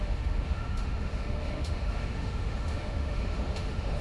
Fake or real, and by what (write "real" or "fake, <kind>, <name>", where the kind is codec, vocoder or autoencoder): fake, autoencoder, DAC-VAE